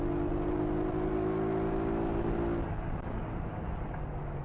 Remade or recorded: recorded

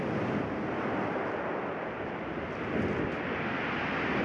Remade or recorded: recorded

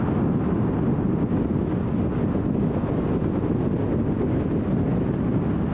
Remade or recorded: recorded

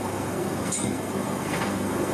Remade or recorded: remade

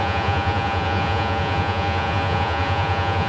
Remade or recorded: remade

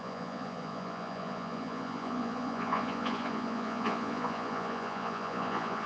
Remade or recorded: remade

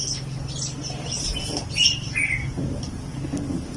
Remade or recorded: recorded